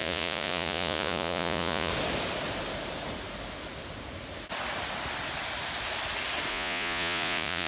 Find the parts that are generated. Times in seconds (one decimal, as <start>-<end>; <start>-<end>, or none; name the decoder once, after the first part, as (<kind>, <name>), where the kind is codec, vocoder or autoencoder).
0.0-1.9 (vocoder, Vocos); 6.5-7.7